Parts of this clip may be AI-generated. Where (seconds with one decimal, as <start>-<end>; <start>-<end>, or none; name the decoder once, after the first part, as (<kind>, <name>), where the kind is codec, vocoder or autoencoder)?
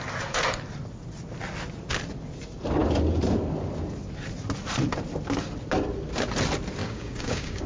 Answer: 6.8-7.7 (codec, DAC)